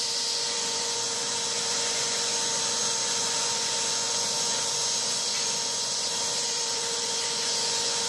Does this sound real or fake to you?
fake